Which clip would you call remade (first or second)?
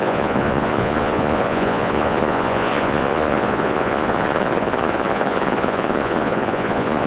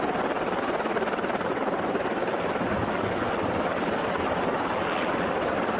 first